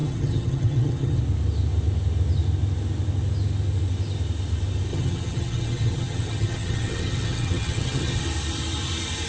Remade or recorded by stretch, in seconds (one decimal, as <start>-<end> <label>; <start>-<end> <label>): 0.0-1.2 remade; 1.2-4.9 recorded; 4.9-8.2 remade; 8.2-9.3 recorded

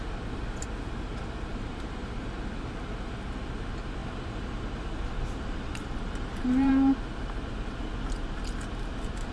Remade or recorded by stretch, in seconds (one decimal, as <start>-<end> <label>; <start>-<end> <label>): 0.0-1.5 recorded; 1.5-2.2 remade; 2.2-4.0 recorded; 4.0-6.7 remade; 6.7-9.3 recorded

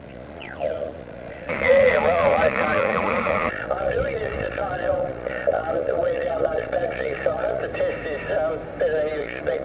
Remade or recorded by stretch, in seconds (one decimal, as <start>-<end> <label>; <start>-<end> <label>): 0.0-7.6 remade; 7.6-9.2 recorded; 9.2-9.6 remade